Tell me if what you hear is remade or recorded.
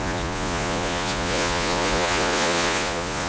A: remade